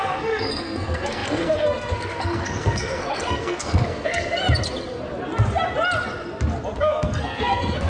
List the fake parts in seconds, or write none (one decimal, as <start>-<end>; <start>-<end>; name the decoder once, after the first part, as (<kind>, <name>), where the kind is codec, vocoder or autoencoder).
0.0-4.4 (codec, SNAC); 6.8-7.9